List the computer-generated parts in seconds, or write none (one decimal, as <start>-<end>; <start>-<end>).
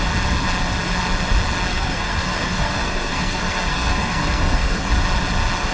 1.7-4.9